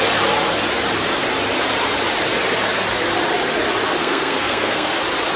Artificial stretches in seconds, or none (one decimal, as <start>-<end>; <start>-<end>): 4.0-5.0